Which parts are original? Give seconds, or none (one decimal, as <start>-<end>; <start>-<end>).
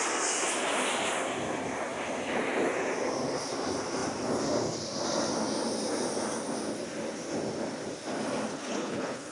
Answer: 0.0-8.5